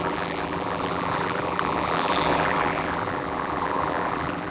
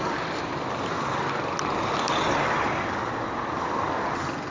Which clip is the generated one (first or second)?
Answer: first